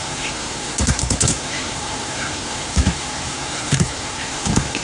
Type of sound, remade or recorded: remade